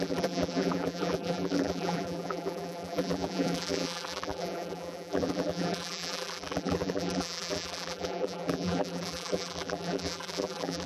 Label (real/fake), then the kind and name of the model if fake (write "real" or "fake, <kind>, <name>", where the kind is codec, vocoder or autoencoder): fake, vocoder, BigVGAN v2